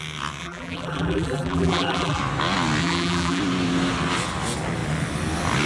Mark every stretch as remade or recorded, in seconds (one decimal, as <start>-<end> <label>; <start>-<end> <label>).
0.0-0.4 recorded; 0.4-2.2 remade; 2.2-2.8 recorded; 2.8-3.4 remade; 3.4-5.7 recorded